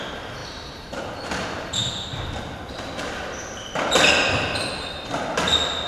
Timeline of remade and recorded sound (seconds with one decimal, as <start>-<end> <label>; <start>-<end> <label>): 0.0-0.4 recorded; 0.4-1.0 remade; 1.0-5.9 recorded